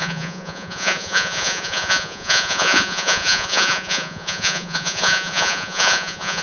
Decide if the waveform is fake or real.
fake